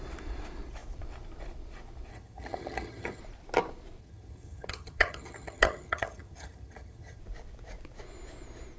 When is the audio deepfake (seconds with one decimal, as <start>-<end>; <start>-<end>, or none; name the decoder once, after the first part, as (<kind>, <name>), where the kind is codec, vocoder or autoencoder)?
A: 2.1-3.2 (vocoder, HiFi-GAN); 4.0-7.2